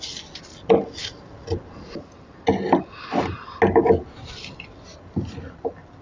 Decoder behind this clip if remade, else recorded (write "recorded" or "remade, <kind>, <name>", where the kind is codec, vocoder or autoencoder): recorded